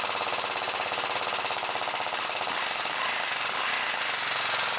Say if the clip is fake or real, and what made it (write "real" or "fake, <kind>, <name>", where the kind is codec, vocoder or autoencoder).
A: real